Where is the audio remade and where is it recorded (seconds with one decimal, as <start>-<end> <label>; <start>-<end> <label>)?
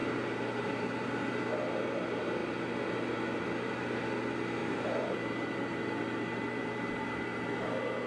0.0-1.3 remade; 1.3-4.6 recorded; 4.6-7.5 remade; 7.5-8.1 recorded